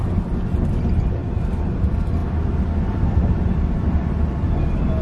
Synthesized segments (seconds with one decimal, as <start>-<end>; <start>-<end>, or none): none